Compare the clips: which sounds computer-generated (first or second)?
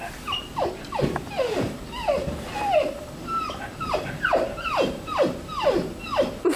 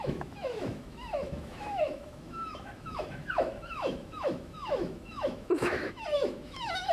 second